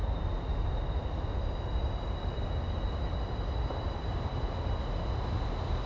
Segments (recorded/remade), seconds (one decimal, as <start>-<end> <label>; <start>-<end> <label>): 0.0-5.9 recorded

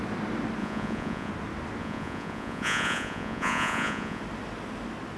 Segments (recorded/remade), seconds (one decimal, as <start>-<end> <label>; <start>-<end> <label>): 0.0-0.6 recorded; 0.6-1.3 remade; 1.3-1.8 recorded; 1.8-4.2 remade; 4.2-5.2 recorded

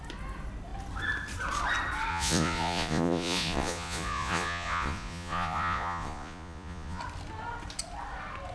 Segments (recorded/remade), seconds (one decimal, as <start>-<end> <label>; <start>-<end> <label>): 0.0-2.1 recorded; 2.1-7.0 remade; 7.0-8.5 recorded